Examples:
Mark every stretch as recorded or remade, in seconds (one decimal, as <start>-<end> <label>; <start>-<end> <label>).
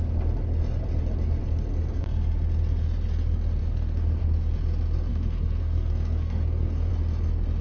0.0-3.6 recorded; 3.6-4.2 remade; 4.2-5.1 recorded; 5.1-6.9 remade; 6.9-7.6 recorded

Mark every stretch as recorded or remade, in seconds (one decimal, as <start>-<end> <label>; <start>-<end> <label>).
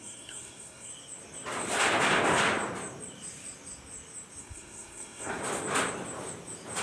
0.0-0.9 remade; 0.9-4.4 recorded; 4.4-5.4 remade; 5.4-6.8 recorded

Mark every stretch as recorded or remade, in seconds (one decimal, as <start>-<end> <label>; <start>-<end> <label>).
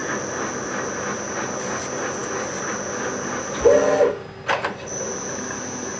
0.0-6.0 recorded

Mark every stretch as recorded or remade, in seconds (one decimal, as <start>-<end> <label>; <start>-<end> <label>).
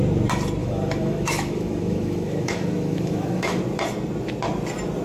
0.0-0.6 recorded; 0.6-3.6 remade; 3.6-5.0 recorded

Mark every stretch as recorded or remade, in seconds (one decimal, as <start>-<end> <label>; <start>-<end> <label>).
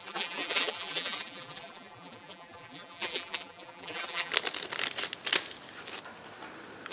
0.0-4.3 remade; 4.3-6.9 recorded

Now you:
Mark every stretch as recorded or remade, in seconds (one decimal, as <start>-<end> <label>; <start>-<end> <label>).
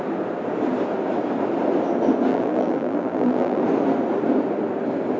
0.0-2.3 recorded; 2.3-3.6 remade; 3.6-5.2 recorded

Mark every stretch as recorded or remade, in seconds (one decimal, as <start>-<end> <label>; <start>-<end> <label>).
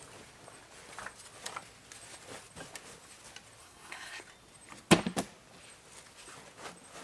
0.0-3.6 recorded; 3.6-4.2 remade; 4.2-7.0 recorded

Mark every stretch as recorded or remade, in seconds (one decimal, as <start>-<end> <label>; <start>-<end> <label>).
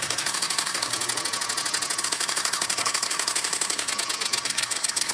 0.0-0.9 remade; 0.9-2.0 recorded; 2.0-3.9 remade; 3.9-4.4 recorded; 4.4-5.1 remade